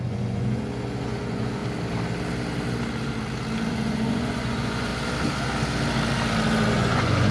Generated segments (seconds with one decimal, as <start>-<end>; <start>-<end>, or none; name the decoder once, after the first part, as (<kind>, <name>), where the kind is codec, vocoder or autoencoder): 0.0-1.6 (vocoder, Vocos); 3.7-4.9; 6.7-7.3